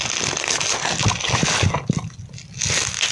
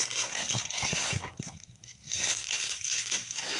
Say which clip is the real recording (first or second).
first